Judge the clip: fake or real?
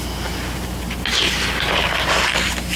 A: real